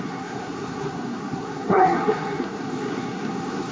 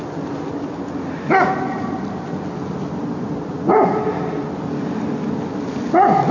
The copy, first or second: first